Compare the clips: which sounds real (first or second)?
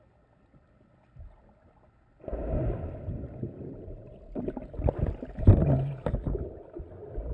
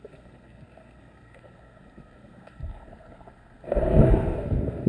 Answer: first